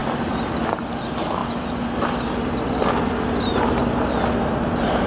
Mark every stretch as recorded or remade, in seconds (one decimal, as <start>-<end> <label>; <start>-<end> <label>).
0.0-5.1 recorded